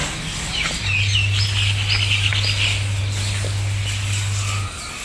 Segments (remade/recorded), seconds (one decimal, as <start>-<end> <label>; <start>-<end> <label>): 0.0-5.0 recorded